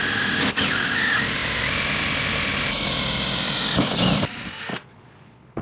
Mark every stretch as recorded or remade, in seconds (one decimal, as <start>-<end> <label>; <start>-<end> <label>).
0.0-4.7 recorded; 4.7-5.6 remade